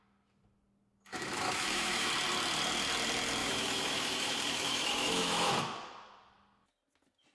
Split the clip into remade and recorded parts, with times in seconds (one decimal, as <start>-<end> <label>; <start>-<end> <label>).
0.0-1.1 recorded; 1.1-2.1 remade; 2.1-3.4 recorded; 3.4-5.5 remade; 5.5-7.3 recorded